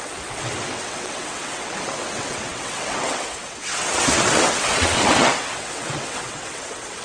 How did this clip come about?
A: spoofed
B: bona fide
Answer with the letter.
A